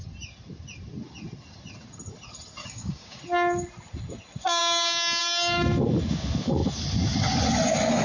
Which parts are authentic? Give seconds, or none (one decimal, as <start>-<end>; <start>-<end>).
0.0-2.6; 3.2-8.0